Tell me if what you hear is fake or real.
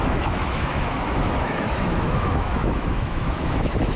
fake